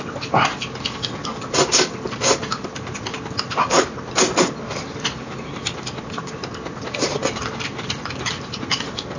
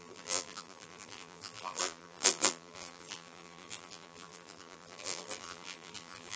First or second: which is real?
first